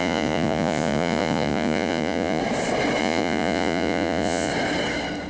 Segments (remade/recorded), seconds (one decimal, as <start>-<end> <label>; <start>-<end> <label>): 0.0-2.4 remade; 2.4-3.0 recorded; 3.0-4.5 remade; 4.5-5.3 recorded